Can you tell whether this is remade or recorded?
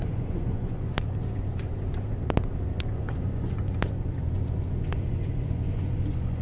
remade